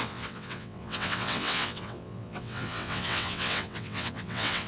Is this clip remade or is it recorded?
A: remade